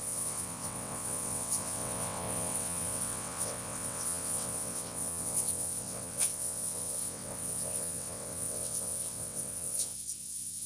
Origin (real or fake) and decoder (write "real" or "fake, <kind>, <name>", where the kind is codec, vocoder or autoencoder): fake, vocoder, WaveNeXt